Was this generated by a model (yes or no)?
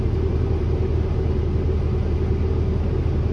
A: no